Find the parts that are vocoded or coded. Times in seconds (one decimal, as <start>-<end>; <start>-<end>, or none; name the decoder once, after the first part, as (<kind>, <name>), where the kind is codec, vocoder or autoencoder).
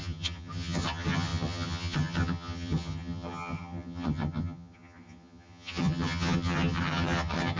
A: 0.0-7.6 (vocoder, HiFi-GAN)